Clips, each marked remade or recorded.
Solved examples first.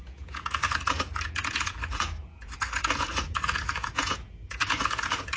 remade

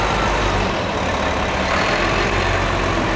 recorded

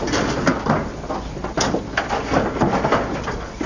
recorded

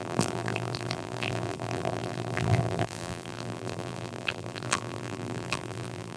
remade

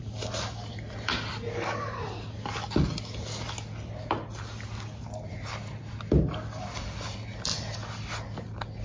recorded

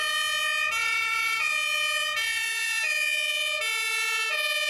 recorded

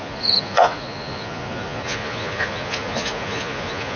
remade